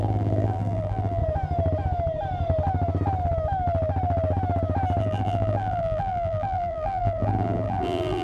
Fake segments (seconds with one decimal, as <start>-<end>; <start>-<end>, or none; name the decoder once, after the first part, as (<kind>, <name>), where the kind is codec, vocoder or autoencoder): 0.0-1.2 (vocoder, BigVGAN v2); 5.0-8.2